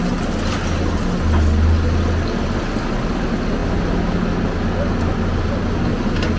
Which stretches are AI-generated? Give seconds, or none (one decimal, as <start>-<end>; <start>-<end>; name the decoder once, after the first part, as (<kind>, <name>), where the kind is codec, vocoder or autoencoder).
none